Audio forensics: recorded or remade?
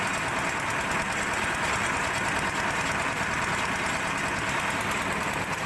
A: recorded